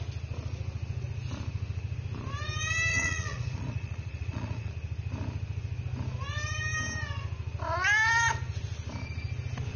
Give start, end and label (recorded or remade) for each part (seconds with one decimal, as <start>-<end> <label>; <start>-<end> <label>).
0.0-2.9 recorded; 2.9-4.7 remade; 4.7-9.8 recorded